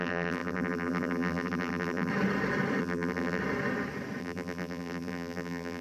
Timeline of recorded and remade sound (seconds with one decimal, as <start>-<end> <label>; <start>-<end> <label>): 0.0-2.1 remade; 2.1-2.8 recorded; 2.8-3.4 remade; 3.4-4.2 recorded; 4.2-5.8 remade